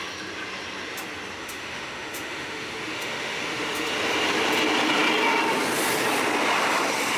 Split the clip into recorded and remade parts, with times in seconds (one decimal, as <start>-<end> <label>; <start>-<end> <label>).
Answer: 0.0-1.4 recorded; 1.4-3.9 remade; 3.9-7.2 recorded

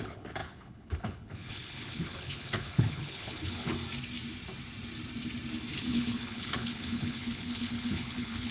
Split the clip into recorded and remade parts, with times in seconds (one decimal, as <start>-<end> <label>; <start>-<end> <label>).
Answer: 0.0-3.7 remade; 3.7-5.7 recorded; 5.7-8.5 remade

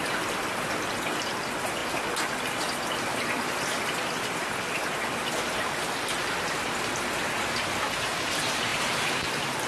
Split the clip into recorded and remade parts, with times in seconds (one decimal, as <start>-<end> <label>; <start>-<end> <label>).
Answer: 0.0-9.7 recorded

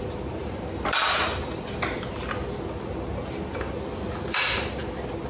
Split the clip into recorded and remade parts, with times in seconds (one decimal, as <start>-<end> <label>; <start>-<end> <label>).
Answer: 0.0-0.4 recorded; 0.4-2.1 remade; 2.1-5.3 recorded

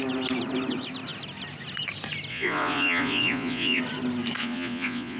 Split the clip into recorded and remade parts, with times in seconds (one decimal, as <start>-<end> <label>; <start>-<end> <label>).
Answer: 0.0-2.3 recorded; 2.3-3.8 remade; 3.8-4.4 recorded; 4.4-5.2 remade

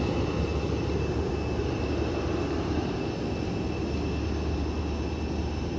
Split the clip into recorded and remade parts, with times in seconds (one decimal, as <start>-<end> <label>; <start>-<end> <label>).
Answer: 0.0-5.8 recorded

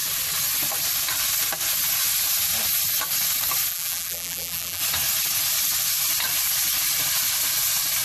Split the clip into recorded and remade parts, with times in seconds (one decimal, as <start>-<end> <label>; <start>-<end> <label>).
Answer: 0.0-3.7 recorded; 3.7-4.8 remade; 4.8-8.0 recorded

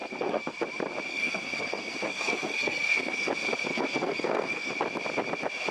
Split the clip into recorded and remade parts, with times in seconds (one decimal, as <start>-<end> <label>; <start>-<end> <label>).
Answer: 0.0-0.6 remade; 0.6-1.1 recorded; 1.1-3.3 remade; 3.3-3.7 recorded; 3.7-4.7 remade; 4.7-5.7 recorded